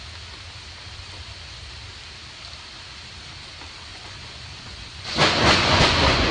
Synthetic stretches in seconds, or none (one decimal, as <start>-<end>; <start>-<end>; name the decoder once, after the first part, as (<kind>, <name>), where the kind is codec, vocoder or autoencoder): 1.0-1.6 (vocoder, Vocos); 3.9-6.3